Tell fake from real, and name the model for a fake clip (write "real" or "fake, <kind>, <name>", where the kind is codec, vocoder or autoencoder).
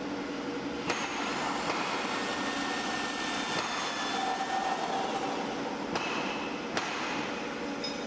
real